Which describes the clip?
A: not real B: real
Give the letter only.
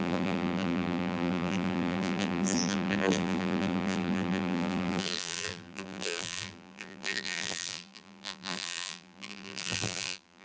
A